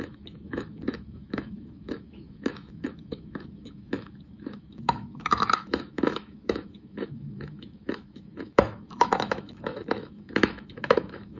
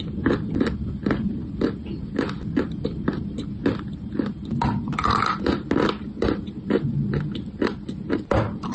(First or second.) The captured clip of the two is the second